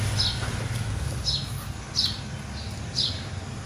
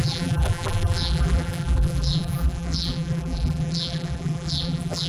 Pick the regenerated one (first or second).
second